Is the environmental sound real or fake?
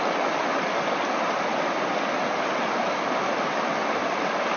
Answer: real